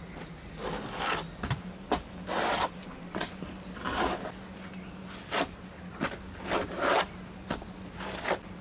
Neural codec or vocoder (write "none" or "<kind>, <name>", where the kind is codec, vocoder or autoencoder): none